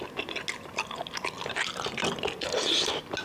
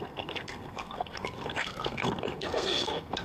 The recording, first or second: first